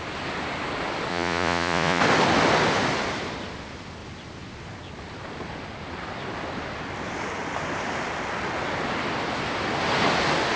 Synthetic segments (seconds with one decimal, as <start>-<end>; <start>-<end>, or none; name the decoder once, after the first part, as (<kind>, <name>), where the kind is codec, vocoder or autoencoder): 1.1-2.0 (vocoder, Vocos)